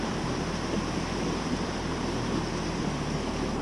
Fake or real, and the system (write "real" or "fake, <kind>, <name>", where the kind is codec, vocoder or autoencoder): fake, vocoder, BigVGAN v2